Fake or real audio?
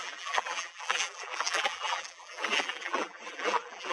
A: fake